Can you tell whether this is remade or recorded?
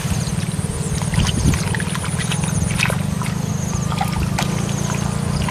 recorded